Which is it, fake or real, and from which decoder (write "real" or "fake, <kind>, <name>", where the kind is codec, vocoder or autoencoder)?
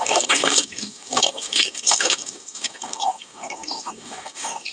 fake, codec, DAC